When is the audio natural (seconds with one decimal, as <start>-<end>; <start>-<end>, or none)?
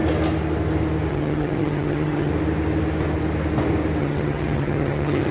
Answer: 0.0-1.1; 2.3-4.0